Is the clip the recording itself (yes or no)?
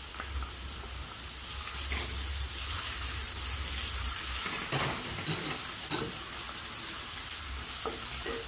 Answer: yes